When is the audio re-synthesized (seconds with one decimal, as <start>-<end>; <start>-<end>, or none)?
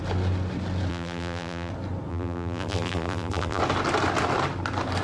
0.9-1.7; 2.1-3.6